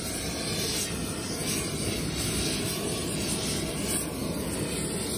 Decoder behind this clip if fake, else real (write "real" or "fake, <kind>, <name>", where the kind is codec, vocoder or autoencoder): real